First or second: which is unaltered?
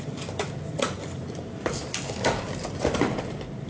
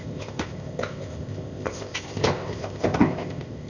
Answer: first